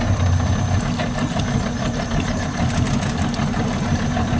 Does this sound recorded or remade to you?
recorded